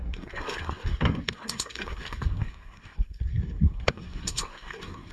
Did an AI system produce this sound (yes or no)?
yes